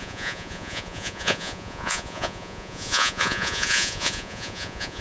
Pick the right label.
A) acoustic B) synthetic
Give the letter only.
B